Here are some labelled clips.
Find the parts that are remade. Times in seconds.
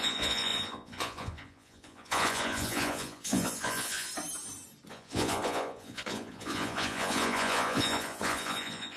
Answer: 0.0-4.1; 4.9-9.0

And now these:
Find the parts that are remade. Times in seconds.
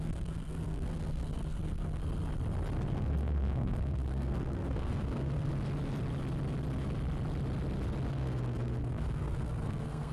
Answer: 0.0-2.0; 2.9-5.5; 8.1-10.1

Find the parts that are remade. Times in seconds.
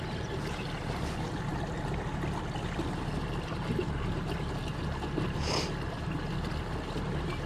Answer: none